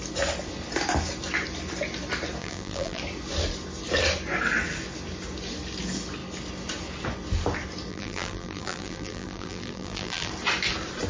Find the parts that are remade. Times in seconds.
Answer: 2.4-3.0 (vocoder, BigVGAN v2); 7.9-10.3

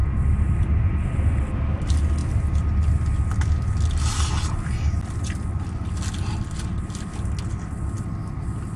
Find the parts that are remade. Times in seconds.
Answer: 0.0-1.1 (vocoder, BigVGAN v2)

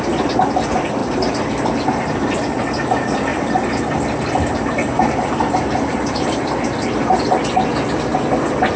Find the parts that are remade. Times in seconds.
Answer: 1.0-2.6 (vocoder, BigVGAN v2); 3.3-6.5

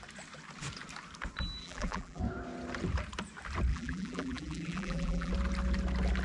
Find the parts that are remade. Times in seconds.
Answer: 1.6-2.2 (vocoder, BigVGAN v2); 3.7-5.3

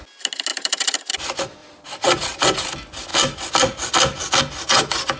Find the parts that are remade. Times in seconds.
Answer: 0.5-1.1 (vocoder, BigVGAN v2); 1.6-2.7

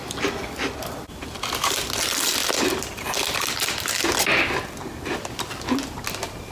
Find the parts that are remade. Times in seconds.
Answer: 2.4-3.8 (vocoder, BigVGAN v2)

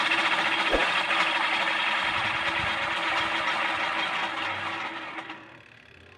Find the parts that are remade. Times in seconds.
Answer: none